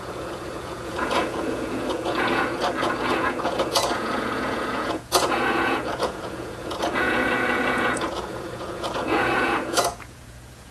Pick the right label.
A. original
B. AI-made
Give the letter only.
B